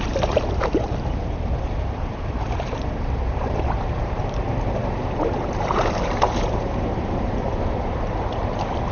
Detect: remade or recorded remade